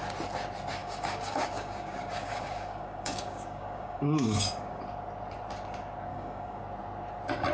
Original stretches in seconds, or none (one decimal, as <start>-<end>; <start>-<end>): 0.0-0.8; 4.8-6.1; 6.6-7.5